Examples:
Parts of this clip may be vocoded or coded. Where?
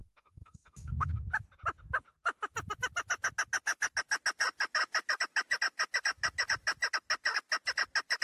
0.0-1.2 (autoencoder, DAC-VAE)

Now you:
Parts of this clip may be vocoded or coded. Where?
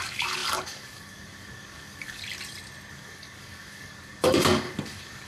0.0-2.2 (codec, DAC); 2.9-5.3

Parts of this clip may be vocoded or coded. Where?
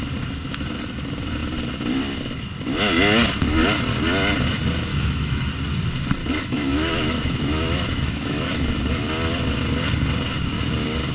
4.9-5.5 (autoencoder, DAC-VAE); 6.2-8.8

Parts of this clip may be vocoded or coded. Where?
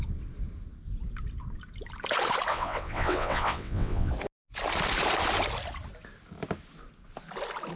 2.5-4.1 (vocoder, WaveNeXt)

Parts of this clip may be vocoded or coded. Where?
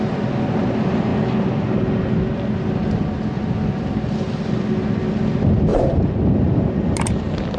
none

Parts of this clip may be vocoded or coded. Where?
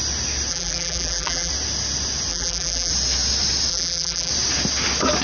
0.5-1.5 (vocoder, BigVGAN v2); 2.3-2.9; 3.7-4.3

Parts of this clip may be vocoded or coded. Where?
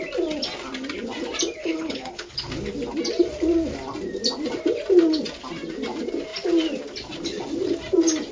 1.6-2.4 (codec, HILCodec)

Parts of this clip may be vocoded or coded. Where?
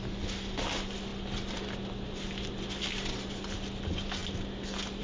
none